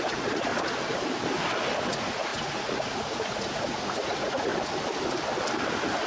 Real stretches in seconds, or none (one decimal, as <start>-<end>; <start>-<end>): 0.5-1.8; 4.5-6.1